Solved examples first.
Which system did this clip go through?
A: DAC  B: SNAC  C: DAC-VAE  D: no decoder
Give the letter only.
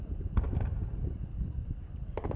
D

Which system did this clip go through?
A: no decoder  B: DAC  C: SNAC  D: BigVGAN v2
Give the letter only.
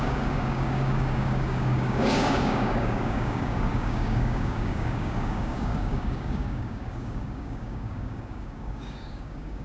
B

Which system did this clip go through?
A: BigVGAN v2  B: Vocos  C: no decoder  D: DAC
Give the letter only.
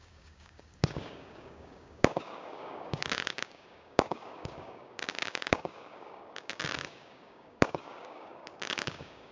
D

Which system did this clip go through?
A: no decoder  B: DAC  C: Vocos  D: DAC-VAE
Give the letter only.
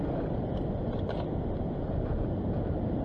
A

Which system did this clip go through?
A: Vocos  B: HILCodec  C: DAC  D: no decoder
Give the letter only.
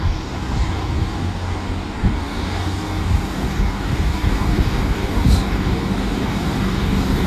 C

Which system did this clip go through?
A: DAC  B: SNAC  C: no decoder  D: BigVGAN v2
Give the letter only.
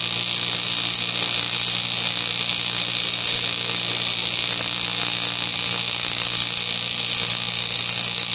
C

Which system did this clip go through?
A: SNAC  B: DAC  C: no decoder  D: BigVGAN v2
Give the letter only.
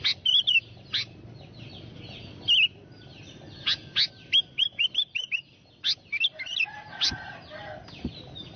C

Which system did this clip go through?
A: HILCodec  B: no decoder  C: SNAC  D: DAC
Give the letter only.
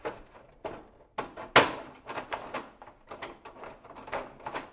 B